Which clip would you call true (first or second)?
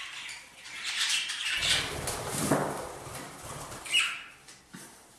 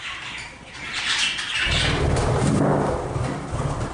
second